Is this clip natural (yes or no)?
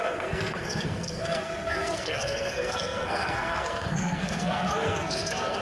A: no